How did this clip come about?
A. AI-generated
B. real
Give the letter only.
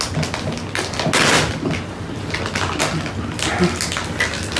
B